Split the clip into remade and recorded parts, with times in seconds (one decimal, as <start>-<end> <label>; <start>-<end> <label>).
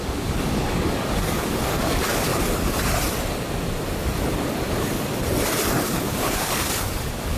0.0-2.3 remade; 2.3-5.8 recorded; 5.8-7.4 remade